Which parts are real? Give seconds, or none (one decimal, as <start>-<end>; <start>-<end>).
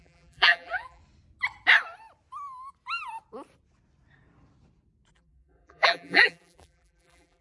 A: 1.0-5.1